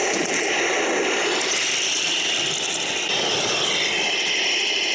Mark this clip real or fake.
real